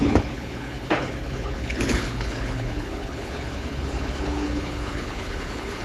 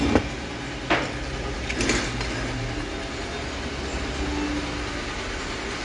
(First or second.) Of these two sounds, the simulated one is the first